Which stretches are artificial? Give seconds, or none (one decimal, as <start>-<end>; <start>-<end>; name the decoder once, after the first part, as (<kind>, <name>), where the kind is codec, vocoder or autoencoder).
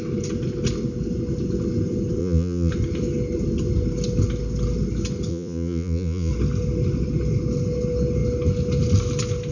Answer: 2.2-2.7 (vocoder, Vocos); 5.3-6.3